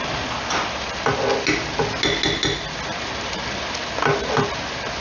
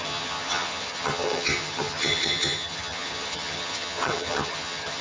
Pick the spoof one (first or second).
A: second